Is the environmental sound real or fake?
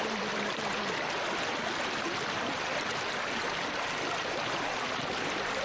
real